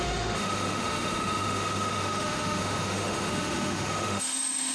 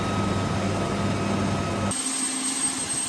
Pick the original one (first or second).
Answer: second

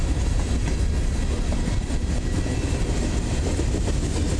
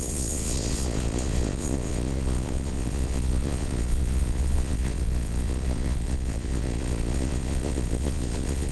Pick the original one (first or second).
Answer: first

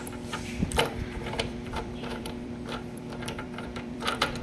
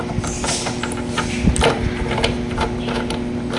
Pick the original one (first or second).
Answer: second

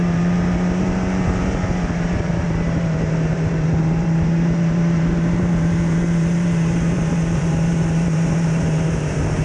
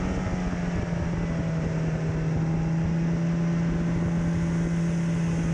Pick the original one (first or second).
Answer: second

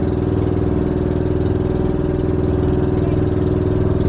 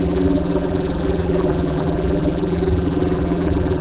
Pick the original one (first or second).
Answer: first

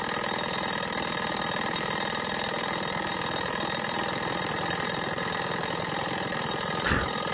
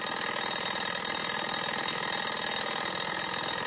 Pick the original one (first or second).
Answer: second